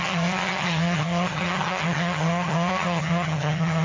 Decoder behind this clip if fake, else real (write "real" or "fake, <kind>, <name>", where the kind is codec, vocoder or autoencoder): fake, vocoder, HiFi-GAN